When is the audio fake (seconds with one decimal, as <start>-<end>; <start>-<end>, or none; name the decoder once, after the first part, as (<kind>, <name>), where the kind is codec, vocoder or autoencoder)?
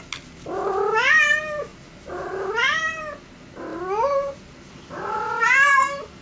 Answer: none